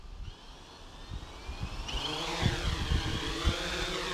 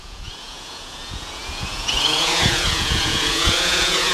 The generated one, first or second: second